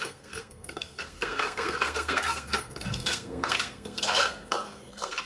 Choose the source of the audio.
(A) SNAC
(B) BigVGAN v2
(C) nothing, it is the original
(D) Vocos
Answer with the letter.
A